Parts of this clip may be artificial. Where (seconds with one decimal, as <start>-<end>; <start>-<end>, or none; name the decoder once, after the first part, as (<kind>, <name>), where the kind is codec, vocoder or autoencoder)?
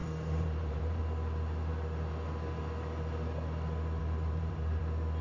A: 0.0-1.0 (vocoder, BigVGAN v2); 4.0-4.8